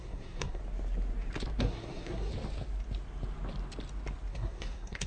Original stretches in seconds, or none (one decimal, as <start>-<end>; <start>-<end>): 0.6-1.6; 2.3-4.3